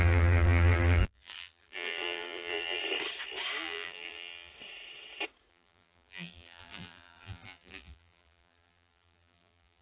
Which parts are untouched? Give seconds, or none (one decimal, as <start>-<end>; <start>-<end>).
2.8-3.6; 4.5-5.5